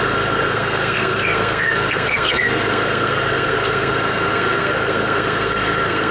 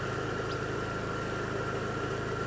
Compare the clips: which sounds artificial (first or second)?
first